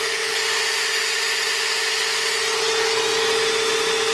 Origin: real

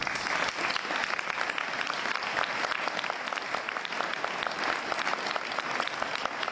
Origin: real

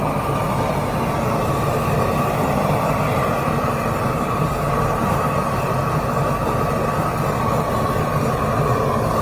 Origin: real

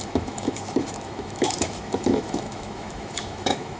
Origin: fake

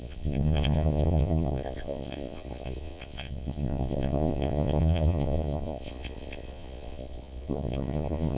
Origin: fake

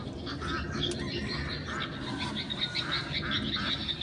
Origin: real